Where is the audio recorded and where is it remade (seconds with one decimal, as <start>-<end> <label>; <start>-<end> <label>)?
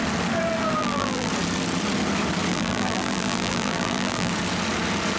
0.0-0.8 recorded; 0.8-1.3 remade; 1.3-2.5 recorded; 2.5-4.3 remade; 4.3-5.2 recorded